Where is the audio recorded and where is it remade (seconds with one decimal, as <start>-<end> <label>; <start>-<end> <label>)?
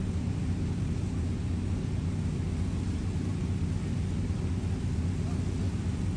0.0-6.2 recorded